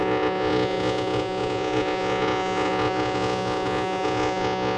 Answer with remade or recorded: remade